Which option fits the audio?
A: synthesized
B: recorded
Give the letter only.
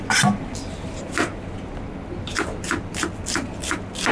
B